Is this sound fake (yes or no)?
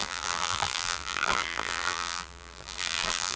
yes